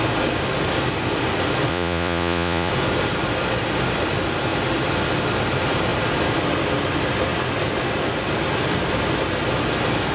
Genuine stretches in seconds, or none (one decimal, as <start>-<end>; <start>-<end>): 0.0-1.7; 2.7-10.1